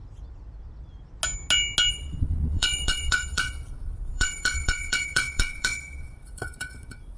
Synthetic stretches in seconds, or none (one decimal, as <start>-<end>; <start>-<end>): 1.9-7.2